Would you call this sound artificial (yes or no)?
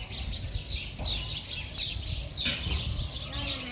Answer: no